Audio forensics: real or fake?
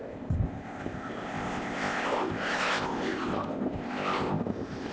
fake